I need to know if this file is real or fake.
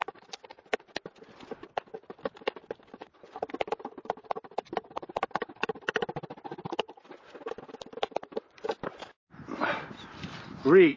real